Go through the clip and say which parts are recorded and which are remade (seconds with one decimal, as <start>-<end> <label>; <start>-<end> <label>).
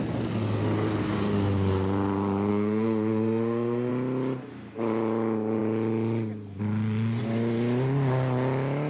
0.0-2.5 recorded; 2.5-3.9 remade; 3.9-8.9 recorded